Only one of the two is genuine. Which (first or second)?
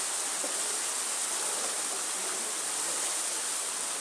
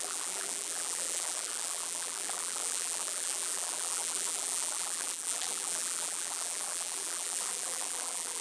first